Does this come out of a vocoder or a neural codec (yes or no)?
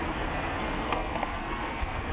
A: yes